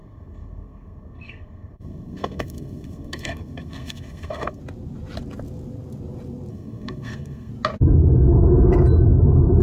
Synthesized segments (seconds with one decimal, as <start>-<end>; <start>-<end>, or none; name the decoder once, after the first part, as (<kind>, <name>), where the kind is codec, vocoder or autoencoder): 0.0-4.6 (codec, SNAC); 6.5-7.5